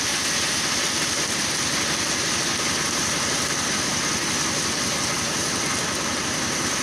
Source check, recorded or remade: recorded